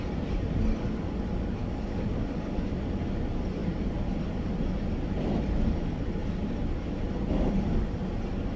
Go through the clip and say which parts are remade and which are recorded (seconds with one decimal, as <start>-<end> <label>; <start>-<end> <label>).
0.0-1.6 recorded; 1.6-2.8 remade; 2.8-8.6 recorded